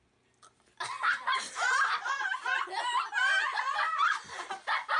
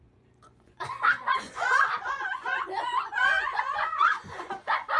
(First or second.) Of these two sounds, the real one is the first